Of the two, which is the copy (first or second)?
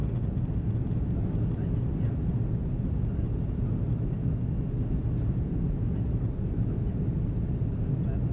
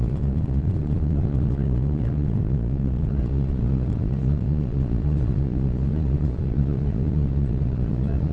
second